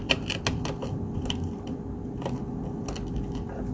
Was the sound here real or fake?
real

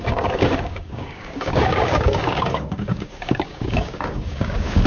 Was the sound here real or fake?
fake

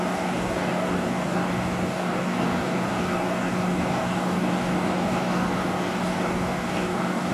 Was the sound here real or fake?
fake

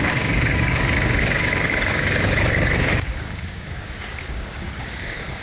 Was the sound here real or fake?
fake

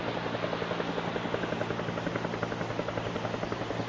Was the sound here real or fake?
real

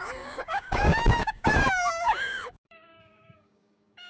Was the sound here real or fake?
fake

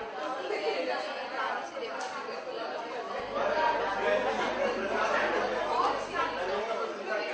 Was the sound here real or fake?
real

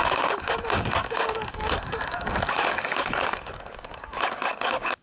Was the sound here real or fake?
fake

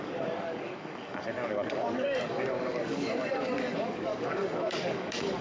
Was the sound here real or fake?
fake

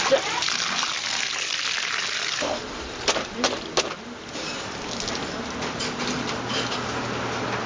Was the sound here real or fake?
real